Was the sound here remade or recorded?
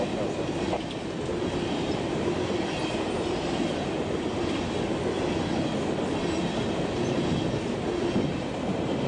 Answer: recorded